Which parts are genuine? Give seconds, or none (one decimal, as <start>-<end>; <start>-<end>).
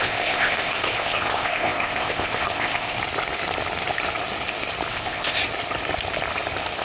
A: 3.0-4.9; 5.4-6.8